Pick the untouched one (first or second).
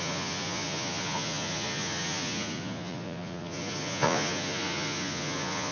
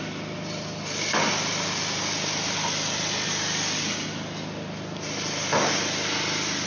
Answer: second